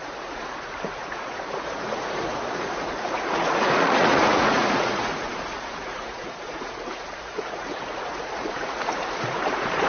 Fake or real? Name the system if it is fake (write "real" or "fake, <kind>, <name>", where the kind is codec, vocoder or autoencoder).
fake, vocoder, Vocos